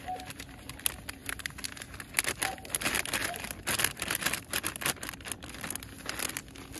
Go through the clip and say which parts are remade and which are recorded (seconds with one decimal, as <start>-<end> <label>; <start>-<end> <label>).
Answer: 0.0-3.2 recorded; 3.2-5.0 remade; 5.0-6.8 recorded